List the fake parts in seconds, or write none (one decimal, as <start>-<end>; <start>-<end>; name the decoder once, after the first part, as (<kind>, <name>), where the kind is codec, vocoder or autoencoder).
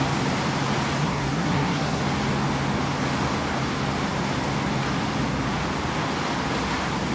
1.0-2.0 (codec, SNAC)